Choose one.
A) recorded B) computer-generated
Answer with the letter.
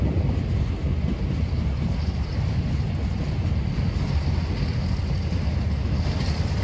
A